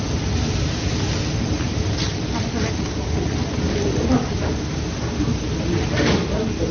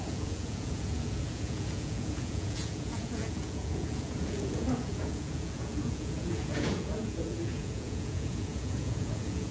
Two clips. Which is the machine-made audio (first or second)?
second